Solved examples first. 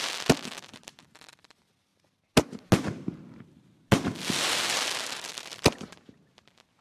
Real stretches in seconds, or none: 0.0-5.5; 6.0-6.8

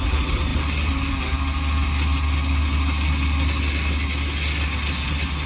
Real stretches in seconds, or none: 0.0-5.5

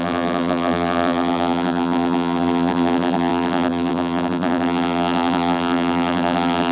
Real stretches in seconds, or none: none

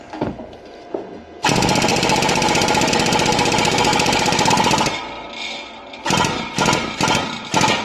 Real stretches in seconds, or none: 0.0-1.9; 2.9-3.9; 4.5-7.8

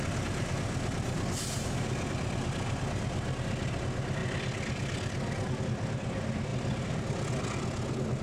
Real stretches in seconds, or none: 0.0-8.2

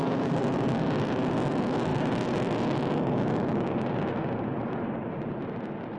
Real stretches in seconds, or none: 0.0-1.9; 5.5-6.0